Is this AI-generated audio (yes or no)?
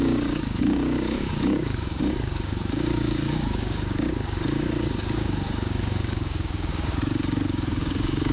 yes